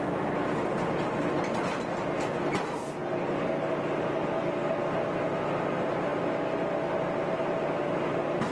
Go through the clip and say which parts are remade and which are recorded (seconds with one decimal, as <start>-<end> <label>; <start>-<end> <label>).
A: 0.0-8.5 recorded